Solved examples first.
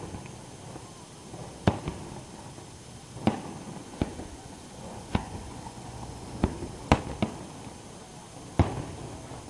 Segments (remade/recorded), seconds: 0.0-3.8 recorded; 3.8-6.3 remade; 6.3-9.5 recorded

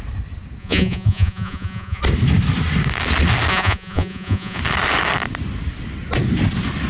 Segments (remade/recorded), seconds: 0.0-0.6 recorded; 0.6-2.0 remade; 2.0-3.5 recorded; 3.5-4.6 remade; 4.6-6.9 recorded